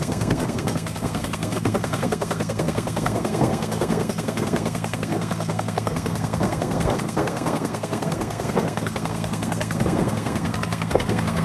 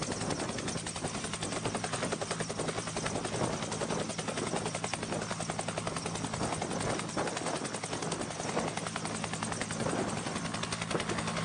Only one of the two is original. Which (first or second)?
second